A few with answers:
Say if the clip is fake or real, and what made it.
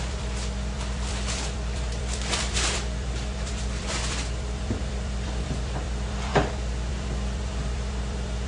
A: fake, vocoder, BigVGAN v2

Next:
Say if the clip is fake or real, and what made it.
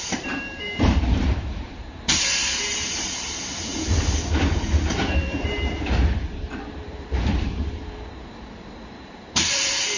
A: fake, vocoder, BigVGAN v2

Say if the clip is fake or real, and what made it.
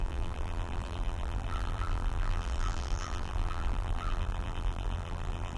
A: fake, vocoder, BigVGAN v2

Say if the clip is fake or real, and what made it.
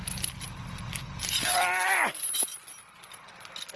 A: real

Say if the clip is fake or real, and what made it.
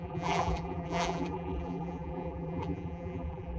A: fake, vocoder, BigVGAN v2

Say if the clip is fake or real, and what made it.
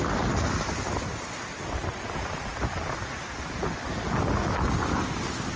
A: real